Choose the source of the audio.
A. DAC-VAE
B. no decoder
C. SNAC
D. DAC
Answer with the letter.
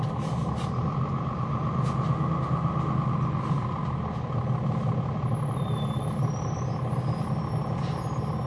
B